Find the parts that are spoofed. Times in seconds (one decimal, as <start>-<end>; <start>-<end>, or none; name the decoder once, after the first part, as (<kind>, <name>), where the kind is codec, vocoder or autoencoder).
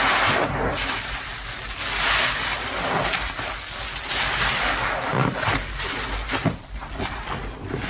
none